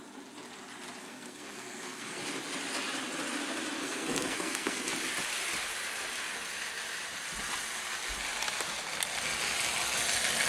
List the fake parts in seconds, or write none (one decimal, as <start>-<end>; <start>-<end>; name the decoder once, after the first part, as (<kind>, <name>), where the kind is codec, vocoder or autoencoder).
1.0-2.2 (codec, SNAC); 3.8-4.9